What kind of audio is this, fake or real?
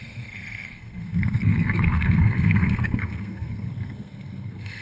fake